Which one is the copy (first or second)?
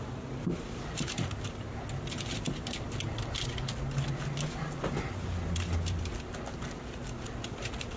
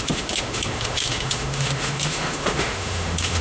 second